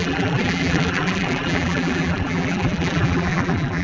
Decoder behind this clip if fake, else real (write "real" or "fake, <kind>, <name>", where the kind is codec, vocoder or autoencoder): fake, vocoder, BigVGAN v2